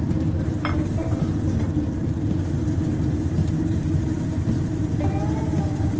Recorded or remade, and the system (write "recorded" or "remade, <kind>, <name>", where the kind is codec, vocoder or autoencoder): remade, vocoder, BigVGAN v2